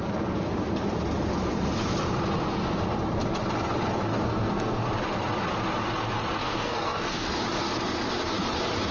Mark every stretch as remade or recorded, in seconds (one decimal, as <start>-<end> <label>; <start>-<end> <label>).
0.0-4.1 recorded; 4.1-4.9 remade; 4.9-6.4 recorded; 6.4-7.3 remade; 7.3-8.9 recorded